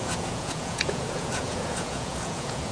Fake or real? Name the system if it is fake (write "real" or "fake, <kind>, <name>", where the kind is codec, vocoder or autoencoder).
fake, vocoder, Vocos